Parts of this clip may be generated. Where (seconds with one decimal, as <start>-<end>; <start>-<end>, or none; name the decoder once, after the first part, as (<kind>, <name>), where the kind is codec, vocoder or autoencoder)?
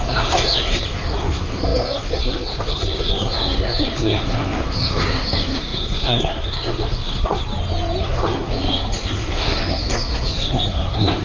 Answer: 0.0-7.4 (codec, SNAC); 8.0-11.2